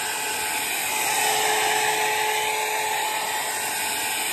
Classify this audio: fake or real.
real